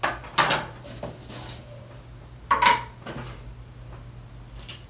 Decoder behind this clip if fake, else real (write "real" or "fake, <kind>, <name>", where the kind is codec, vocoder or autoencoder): real